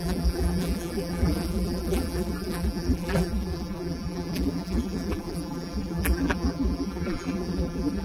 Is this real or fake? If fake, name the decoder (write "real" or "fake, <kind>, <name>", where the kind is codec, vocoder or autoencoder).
fake, vocoder, BigVGAN v2